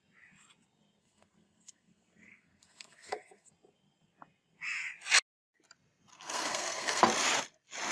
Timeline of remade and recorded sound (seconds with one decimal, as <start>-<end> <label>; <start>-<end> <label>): 0.0-1.0 recorded; 1.0-3.5 remade; 3.5-6.1 recorded; 6.1-7.0 remade; 7.0-7.9 recorded